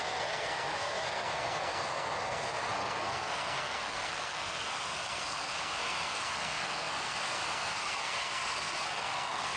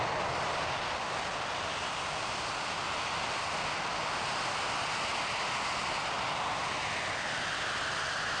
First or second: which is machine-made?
first